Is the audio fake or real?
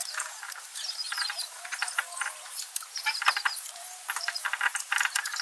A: fake